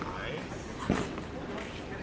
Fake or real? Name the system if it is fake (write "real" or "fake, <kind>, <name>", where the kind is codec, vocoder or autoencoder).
real